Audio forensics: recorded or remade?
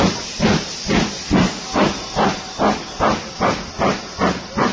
recorded